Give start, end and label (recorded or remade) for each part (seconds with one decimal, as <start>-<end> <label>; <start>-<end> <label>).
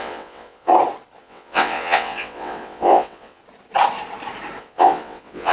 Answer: 0.0-0.7 remade; 0.7-1.2 recorded; 1.2-3.4 remade; 3.4-4.6 recorded; 4.6-5.5 remade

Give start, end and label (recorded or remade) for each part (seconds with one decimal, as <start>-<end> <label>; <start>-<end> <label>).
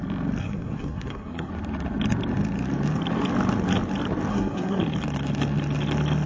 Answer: 0.0-0.4 recorded; 0.4-1.5 remade; 1.5-4.3 recorded; 4.3-4.8 remade; 4.8-6.3 recorded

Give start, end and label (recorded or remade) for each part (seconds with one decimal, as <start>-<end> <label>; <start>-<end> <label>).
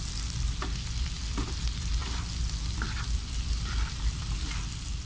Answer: 0.0-5.1 recorded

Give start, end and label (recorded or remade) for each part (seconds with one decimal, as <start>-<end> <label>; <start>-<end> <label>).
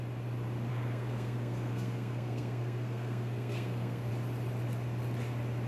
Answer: 0.0-0.7 recorded; 0.7-4.1 remade; 4.1-5.7 recorded